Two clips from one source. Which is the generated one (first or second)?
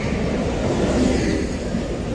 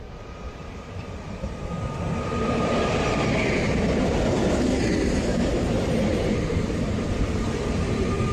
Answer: second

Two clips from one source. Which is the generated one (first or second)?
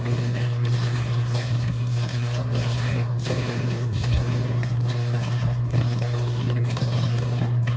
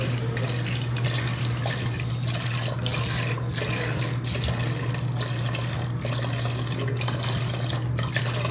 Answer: first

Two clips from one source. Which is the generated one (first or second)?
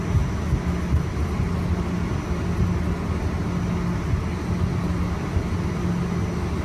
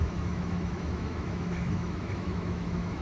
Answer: second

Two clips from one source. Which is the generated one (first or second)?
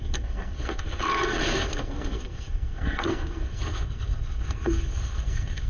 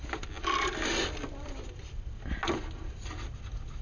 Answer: first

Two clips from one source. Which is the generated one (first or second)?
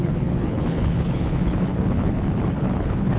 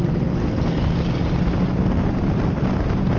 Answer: first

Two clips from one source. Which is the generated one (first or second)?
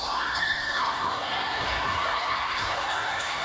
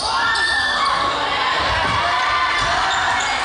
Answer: first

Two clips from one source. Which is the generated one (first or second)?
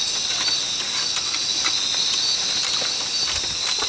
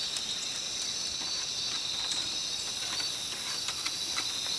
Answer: second